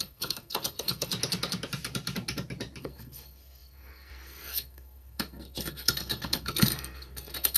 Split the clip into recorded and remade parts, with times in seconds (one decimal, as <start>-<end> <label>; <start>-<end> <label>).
0.0-1.1 remade; 1.1-2.8 recorded; 2.8-7.6 remade